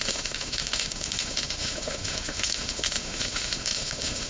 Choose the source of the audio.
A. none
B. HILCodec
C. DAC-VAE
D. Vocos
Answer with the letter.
C